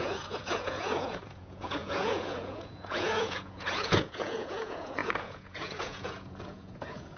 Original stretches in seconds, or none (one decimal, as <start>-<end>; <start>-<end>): none